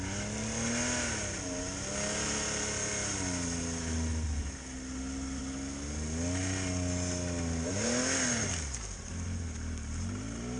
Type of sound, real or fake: real